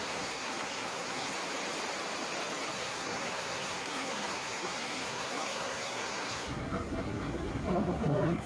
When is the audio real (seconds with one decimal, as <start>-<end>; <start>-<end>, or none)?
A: 1.3-2.7